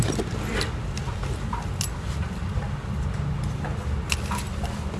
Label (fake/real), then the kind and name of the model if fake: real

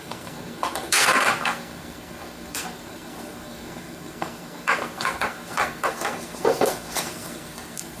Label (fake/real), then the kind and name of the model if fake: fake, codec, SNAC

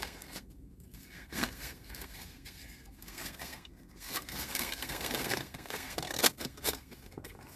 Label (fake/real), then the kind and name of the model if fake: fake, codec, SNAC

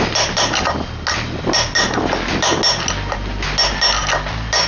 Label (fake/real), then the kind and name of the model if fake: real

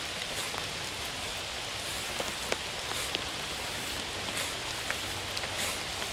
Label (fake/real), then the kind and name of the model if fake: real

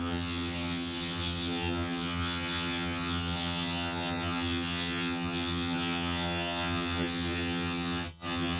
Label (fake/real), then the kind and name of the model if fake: fake, vocoder, HiFi-GAN